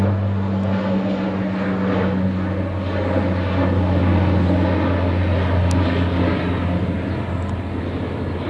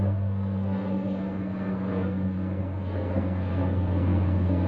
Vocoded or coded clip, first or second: second